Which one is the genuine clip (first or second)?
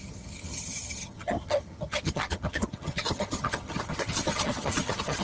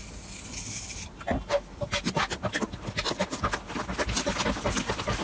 second